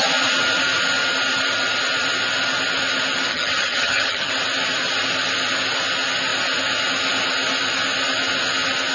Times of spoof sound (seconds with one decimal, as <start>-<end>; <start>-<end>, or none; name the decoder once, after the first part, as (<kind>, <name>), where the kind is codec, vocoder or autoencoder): 3.3-4.3 (vocoder, HiFi-GAN)